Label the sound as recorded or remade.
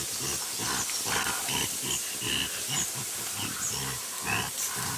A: recorded